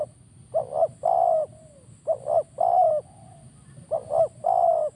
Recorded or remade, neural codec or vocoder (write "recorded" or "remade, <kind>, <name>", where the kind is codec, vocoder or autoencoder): recorded